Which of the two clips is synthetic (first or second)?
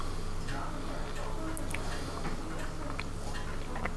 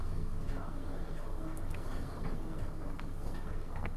second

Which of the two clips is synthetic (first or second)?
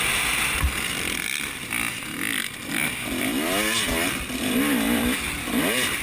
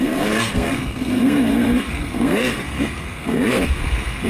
second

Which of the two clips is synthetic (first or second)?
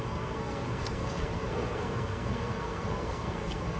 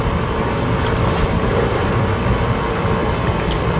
first